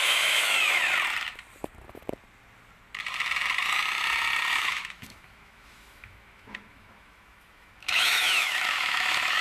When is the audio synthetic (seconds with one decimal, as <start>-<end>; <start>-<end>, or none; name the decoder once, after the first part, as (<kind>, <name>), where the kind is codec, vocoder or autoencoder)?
0.0-0.8 (autoencoder, DAC-VAE); 4.5-9.4